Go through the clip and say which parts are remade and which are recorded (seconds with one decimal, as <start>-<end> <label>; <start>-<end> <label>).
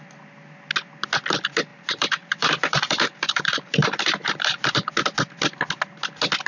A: 0.0-1.7 recorded; 1.7-4.9 remade; 4.9-6.5 recorded